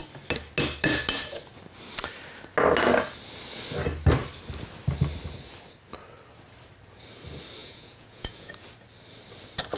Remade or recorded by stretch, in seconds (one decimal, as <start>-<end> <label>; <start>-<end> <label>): 0.0-7.6 recorded; 7.6-8.5 remade; 8.5-9.8 recorded